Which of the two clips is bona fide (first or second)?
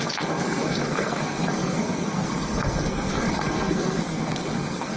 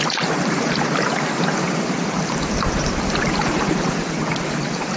second